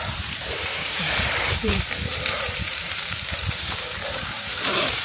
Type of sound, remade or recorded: remade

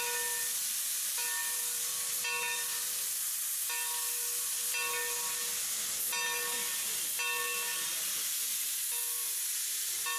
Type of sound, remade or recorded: recorded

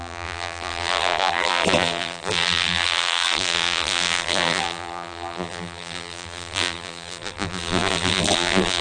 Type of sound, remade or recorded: remade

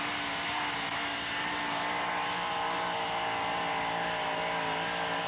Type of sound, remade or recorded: recorded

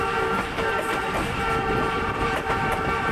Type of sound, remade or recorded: remade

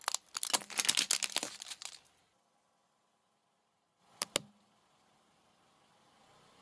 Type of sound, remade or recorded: recorded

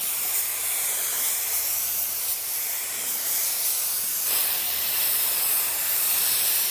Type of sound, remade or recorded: remade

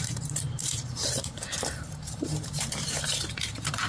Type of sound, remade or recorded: remade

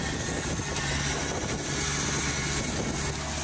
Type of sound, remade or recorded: recorded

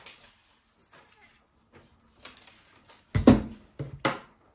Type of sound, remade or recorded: recorded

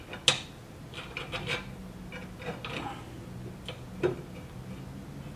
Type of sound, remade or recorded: recorded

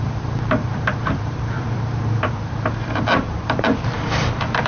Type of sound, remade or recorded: remade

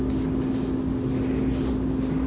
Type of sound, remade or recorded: recorded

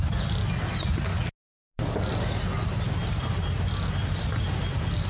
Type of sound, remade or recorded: recorded